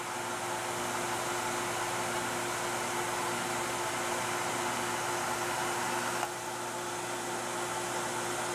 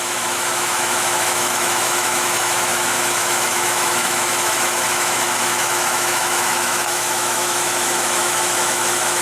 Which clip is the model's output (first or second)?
second